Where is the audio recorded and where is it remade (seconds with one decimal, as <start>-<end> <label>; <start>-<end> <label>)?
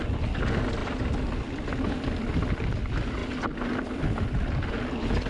0.0-0.8 recorded; 0.8-2.8 remade; 2.8-5.3 recorded